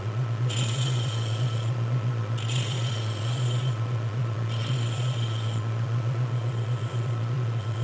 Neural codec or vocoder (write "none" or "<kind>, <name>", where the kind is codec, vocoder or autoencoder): vocoder, Vocos